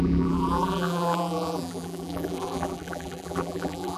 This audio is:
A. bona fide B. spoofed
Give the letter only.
B